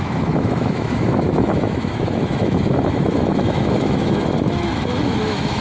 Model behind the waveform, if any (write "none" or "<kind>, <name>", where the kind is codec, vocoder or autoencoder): autoencoder, DAC-VAE